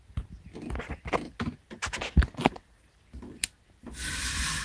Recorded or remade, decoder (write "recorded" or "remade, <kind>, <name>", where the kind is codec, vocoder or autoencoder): recorded